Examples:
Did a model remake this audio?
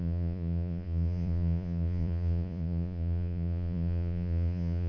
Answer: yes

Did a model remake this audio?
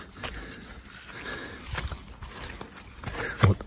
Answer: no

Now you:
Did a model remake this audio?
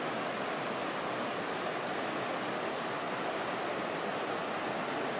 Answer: no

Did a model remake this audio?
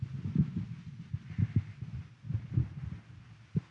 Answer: no